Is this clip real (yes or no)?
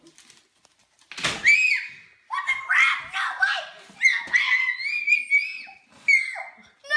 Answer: yes